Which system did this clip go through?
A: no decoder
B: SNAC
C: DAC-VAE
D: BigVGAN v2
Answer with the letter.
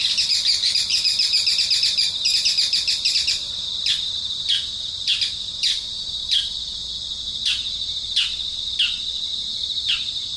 A